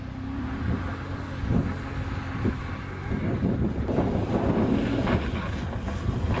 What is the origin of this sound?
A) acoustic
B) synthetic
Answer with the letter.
A